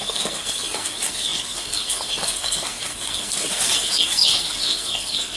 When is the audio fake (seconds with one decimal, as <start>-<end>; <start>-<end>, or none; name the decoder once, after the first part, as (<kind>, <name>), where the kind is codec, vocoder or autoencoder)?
0.0-5.4 (codec, SNAC)